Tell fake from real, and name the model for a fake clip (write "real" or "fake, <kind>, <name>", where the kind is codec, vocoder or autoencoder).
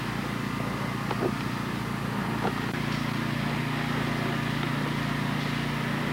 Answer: real